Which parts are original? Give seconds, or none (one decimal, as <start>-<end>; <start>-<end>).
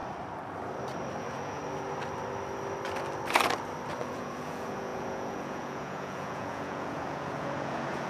0.0-1.2; 1.6-4.0